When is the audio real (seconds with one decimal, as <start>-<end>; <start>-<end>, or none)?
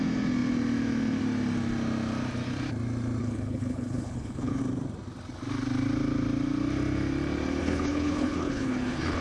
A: 0.0-3.2; 4.6-7.6